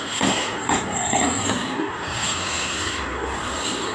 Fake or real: fake